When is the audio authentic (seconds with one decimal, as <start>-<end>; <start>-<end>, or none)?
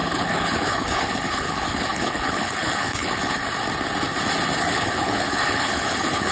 3.4-4.6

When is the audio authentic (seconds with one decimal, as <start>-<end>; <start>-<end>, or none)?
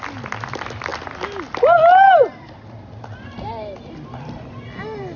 0.0-5.2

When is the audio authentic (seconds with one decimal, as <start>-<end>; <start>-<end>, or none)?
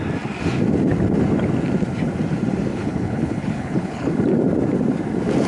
0.0-2.7; 4.1-5.5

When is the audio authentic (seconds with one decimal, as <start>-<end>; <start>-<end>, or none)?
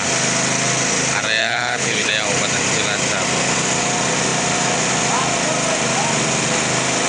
0.0-1.4; 2.1-7.1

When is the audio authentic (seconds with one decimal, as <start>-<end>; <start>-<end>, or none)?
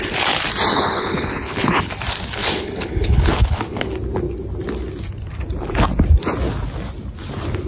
0.0-0.7; 1.9-2.4; 3.9-7.7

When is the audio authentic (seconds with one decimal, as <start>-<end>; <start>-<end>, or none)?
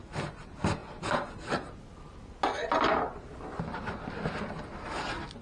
0.0-5.4